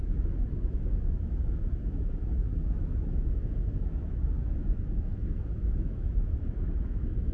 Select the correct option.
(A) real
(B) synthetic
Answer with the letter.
B